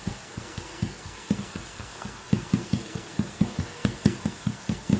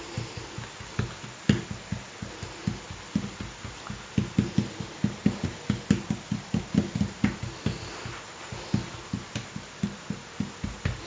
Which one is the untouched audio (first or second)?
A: second